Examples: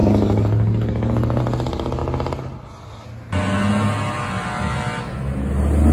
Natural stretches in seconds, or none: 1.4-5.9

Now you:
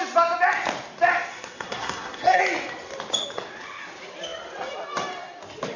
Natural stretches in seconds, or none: 0.0-1.3; 2.4-5.8

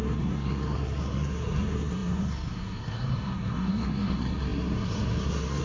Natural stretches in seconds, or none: none

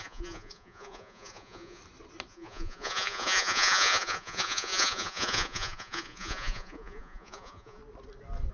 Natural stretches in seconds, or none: 1.8-2.3; 7.8-8.5

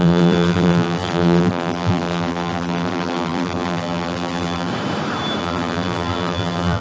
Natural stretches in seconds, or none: 4.7-5.4

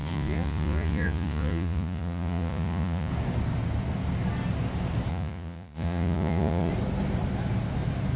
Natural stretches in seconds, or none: 3.1-5.1; 6.7-8.2